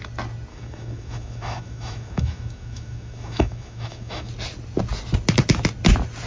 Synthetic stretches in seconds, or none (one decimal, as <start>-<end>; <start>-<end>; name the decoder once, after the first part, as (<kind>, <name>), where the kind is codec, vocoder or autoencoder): 0.5-4.3 (autoencoder, DAC-VAE)